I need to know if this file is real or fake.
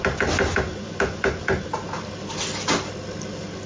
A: real